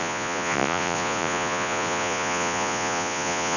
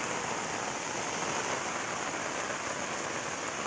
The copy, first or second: first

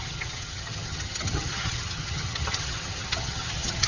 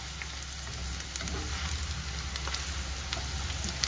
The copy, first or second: first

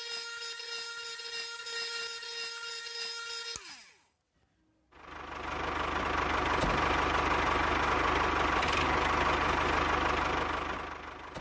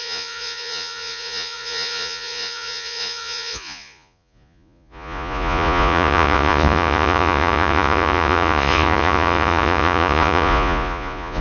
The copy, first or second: second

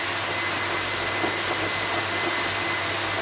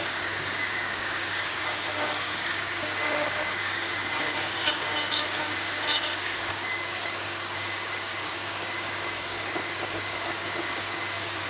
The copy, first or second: second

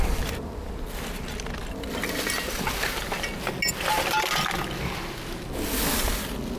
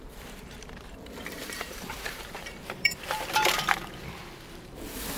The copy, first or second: second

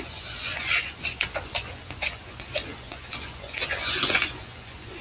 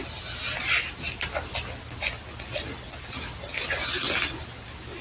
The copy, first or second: first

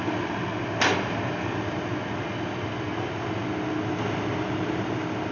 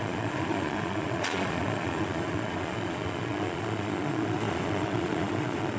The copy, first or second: second